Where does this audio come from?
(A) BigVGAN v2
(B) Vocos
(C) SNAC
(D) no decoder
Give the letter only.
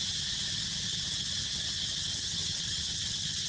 D